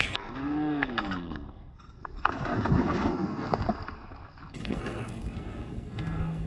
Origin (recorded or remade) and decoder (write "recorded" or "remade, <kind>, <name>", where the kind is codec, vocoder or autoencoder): remade, codec, SNAC